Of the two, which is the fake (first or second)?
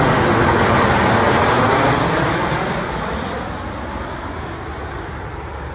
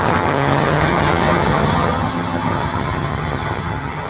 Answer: second